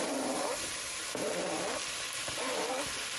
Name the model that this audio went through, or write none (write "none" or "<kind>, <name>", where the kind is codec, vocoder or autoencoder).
none